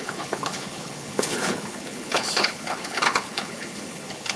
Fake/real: fake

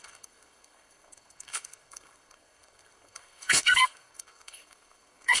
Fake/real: fake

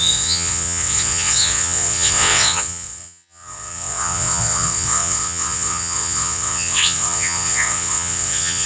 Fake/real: fake